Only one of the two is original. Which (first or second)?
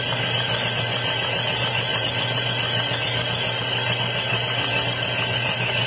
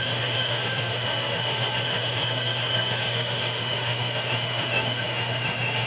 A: first